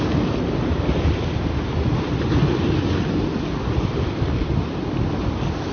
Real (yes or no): yes